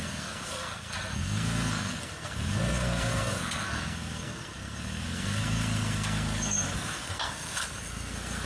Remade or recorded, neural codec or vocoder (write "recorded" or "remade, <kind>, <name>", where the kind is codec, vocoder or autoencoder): remade, codec, SNAC